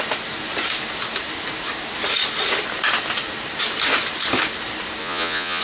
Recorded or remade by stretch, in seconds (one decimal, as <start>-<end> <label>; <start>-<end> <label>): 0.0-5.0 recorded; 5.0-5.6 remade